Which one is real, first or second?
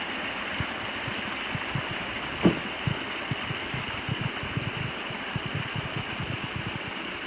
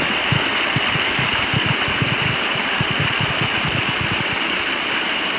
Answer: first